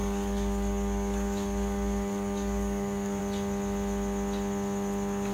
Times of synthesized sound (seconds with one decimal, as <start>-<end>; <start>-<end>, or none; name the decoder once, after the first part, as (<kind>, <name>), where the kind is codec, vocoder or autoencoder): 0.0-3.2 (codec, DAC)